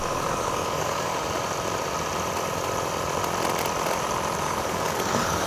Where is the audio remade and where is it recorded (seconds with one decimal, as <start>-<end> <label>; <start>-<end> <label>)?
0.0-1.1 remade; 1.1-4.4 recorded; 4.4-5.5 remade